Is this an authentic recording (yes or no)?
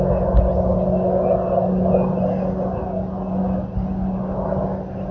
yes